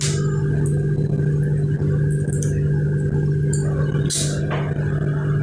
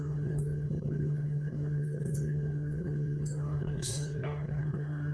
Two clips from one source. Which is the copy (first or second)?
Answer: second